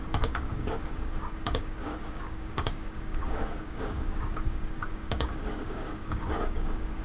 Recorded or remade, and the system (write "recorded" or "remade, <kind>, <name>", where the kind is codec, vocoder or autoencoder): remade, codec, DAC